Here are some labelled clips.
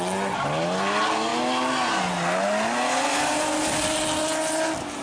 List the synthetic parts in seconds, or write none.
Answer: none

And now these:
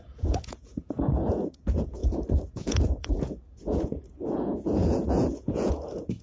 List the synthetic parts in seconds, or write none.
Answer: 0.0-6.2

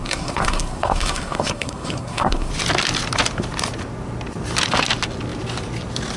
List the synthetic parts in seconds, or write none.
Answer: 0.0-2.5